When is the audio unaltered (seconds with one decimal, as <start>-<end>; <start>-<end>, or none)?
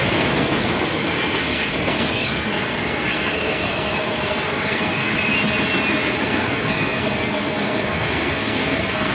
5.1-6.2